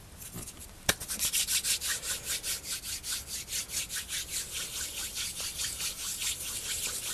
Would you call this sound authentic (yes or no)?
yes